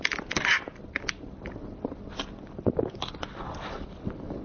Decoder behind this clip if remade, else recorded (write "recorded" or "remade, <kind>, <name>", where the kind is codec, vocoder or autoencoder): recorded